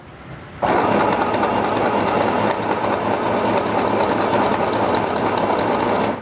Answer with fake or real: real